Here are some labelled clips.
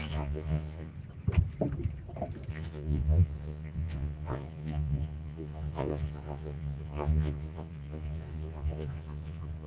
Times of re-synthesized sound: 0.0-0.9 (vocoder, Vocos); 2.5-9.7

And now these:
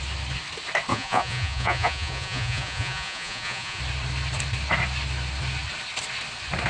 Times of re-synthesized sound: 0.9-3.8 (vocoder, Vocos)

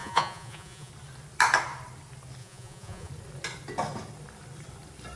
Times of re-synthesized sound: 0.0-0.9 (vocoder, Vocos); 2.4-3.1

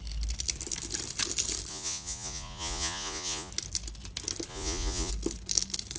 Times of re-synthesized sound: 1.7-3.5 (vocoder, Vocos); 4.5-5.1

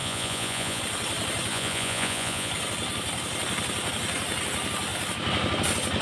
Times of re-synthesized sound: 0.0-0.8 (vocoder, Vocos); 1.5-2.5

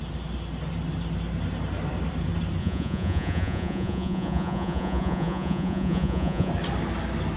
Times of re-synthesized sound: 2.6-6.5 (vocoder, Vocos)